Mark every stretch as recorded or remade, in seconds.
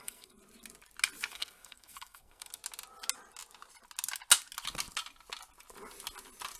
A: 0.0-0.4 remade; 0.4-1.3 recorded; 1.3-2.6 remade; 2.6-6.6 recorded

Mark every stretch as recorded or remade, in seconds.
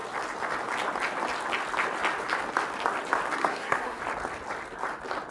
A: 0.0-3.4 recorded; 3.4-4.0 remade; 4.0-5.3 recorded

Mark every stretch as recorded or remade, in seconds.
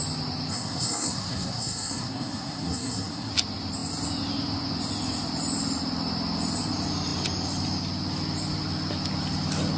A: 0.0-0.5 recorded; 0.5-3.3 remade; 3.3-9.8 recorded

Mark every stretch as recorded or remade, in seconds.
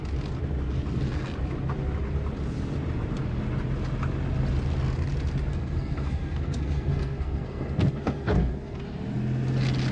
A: 0.0-5.5 recorded; 5.5-8.8 remade; 8.8-9.9 recorded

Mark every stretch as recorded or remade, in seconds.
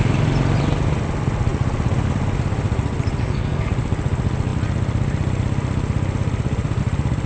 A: 0.0-3.2 recorded; 3.2-3.7 remade; 3.7-7.3 recorded